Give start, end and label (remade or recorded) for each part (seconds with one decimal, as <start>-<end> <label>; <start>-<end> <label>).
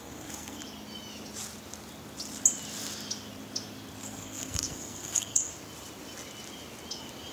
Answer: 0.0-0.6 remade; 0.6-4.0 recorded; 4.0-5.5 remade; 5.5-7.3 recorded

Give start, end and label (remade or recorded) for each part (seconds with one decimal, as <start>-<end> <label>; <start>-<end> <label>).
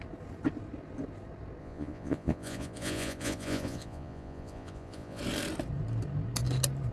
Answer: 0.0-1.6 recorded; 1.6-5.2 remade; 5.2-6.9 recorded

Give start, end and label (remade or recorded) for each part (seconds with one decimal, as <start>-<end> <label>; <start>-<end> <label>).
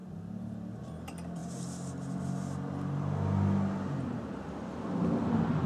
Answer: 0.0-5.7 recorded